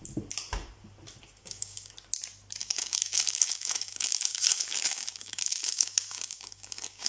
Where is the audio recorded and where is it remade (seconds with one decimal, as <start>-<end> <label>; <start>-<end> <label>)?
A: 0.0-1.4 recorded; 1.4-1.9 remade; 1.9-2.6 recorded; 2.6-7.1 remade